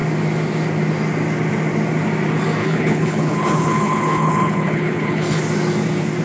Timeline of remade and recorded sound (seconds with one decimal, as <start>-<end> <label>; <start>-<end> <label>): 0.0-2.6 recorded; 2.6-5.4 remade; 5.4-6.2 recorded